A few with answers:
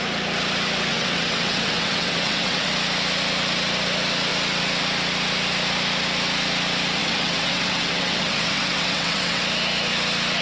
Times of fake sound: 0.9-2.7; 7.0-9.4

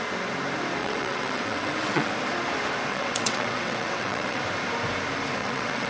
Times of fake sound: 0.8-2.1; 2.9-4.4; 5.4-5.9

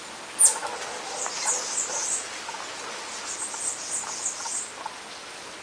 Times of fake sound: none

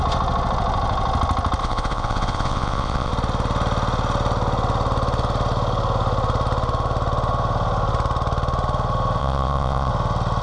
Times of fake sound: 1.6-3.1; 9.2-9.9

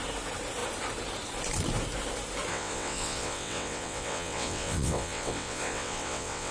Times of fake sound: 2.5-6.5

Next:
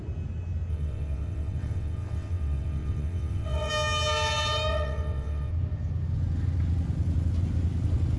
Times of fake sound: 0.7-3.7; 4.7-5.5

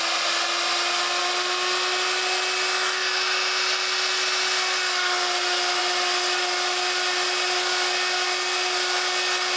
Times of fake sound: none

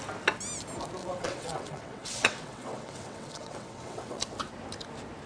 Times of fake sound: 1.0-4.2